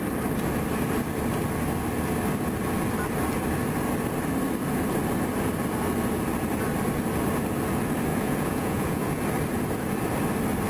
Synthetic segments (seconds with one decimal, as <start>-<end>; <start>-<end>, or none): 8.1-9.2